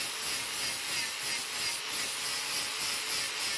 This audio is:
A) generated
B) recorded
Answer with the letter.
B